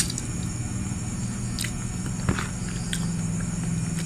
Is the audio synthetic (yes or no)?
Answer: no